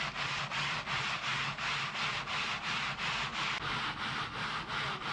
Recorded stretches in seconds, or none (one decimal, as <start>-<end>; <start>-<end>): 0.0-5.1